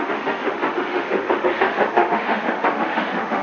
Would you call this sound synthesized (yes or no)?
yes